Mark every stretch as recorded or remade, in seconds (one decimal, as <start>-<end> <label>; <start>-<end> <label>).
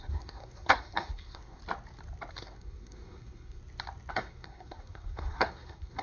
0.0-1.6 remade; 1.6-2.3 recorded; 2.3-3.6 remade; 3.6-4.1 recorded; 4.1-6.0 remade